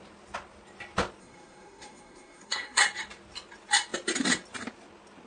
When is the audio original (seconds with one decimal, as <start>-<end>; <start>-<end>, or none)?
0.0-1.2; 2.8-5.3

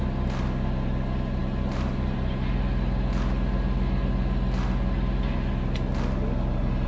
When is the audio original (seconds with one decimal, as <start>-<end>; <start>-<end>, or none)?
0.0-6.9

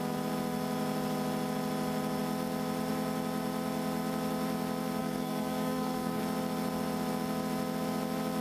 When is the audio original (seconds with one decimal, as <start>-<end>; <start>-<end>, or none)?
0.0-5.0; 6.2-8.4

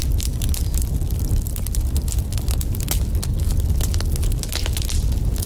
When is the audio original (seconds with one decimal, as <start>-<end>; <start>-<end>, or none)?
0.0-5.5

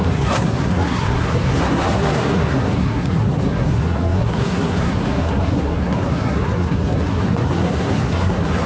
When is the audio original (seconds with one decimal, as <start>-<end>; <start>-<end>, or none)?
none

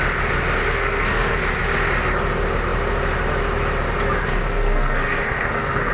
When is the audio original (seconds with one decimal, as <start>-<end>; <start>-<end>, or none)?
0.0-0.6; 1.4-4.3

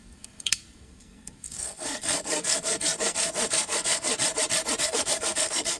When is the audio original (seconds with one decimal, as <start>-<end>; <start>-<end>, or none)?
4.1-4.8

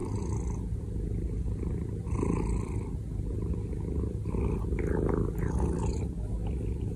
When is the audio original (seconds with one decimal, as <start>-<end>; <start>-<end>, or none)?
0.0-7.0